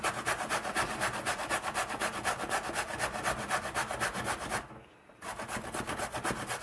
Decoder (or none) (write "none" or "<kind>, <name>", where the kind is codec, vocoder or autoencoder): none